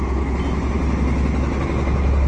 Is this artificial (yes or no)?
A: no